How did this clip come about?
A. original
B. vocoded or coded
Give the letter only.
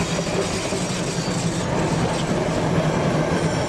A